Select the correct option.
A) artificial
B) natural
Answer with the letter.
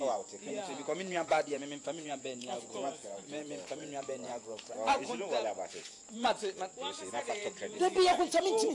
A